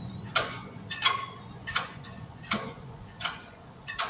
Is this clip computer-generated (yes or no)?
yes